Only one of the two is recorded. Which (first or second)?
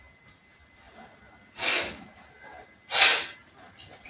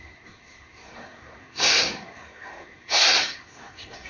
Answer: first